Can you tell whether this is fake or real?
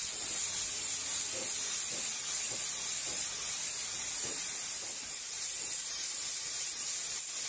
real